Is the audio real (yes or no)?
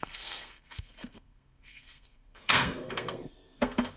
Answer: no